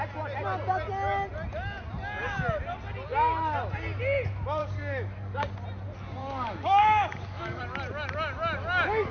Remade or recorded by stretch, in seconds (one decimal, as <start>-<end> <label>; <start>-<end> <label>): 0.0-4.6 recorded; 4.6-5.5 remade; 5.5-6.2 recorded; 6.2-7.6 remade; 7.6-9.1 recorded

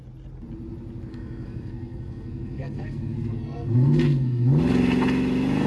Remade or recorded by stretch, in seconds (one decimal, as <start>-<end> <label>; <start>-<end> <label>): 0.0-1.1 recorded; 1.1-4.5 remade; 4.5-5.7 recorded

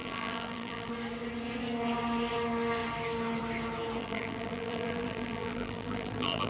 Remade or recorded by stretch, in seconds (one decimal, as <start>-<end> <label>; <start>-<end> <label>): 0.0-0.9 remade; 0.9-4.0 recorded; 4.0-6.5 remade

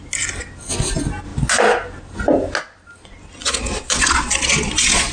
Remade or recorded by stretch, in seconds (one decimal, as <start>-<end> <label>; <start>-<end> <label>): 0.0-3.4 recorded; 3.4-5.1 remade

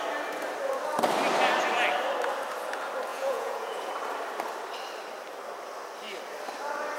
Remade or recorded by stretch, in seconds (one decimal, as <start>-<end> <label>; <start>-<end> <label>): 0.0-3.1 recorded; 3.1-3.9 remade; 3.9-7.0 recorded

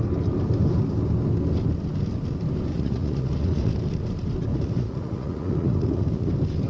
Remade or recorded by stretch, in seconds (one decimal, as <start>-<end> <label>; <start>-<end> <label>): 0.0-2.7 recorded; 2.7-3.7 remade; 3.7-4.5 recorded; 4.5-6.3 remade; 6.3-6.7 recorded

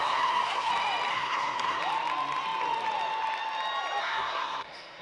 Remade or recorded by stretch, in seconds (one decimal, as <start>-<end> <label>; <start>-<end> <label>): 0.0-0.7 remade; 0.7-1.1 recorded; 1.1-1.8 remade; 1.8-4.0 recorded; 4.0-5.0 remade

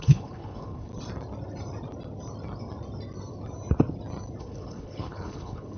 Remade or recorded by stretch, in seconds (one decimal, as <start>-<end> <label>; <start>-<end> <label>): 0.0-0.9 remade; 0.9-4.4 recorded; 4.4-5.8 remade